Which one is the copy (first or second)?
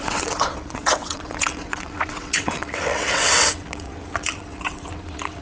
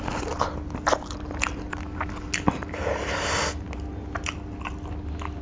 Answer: first